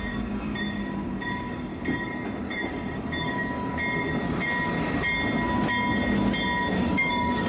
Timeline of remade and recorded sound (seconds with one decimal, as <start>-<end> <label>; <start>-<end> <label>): 0.0-1.7 remade; 1.7-2.5 recorded; 2.5-3.7 remade; 3.7-6.7 recorded; 6.7-7.5 remade